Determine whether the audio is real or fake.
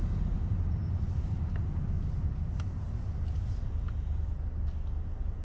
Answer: real